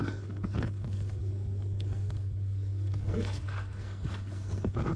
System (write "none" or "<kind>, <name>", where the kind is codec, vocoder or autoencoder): codec, SNAC